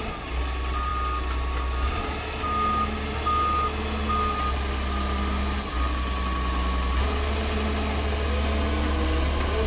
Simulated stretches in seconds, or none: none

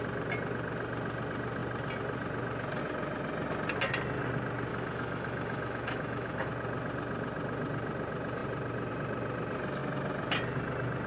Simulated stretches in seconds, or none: 4.7-6.5 (autoencoder, DAC-VAE)

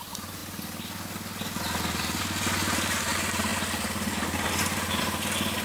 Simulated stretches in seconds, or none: none

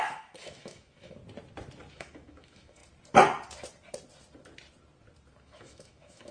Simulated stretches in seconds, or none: 0.0-1.2 (autoencoder, DAC-VAE); 1.9-2.8; 5.4-6.3